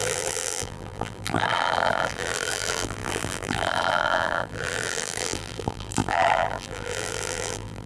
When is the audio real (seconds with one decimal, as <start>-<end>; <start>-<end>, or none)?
none